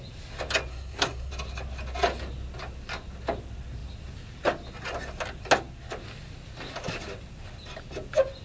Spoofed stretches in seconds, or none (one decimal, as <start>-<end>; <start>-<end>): 0.7-1.3